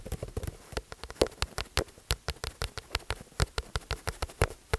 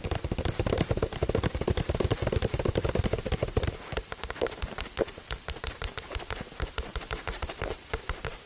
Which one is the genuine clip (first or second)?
first